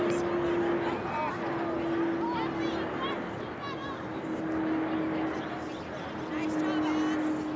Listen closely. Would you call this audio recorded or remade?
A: recorded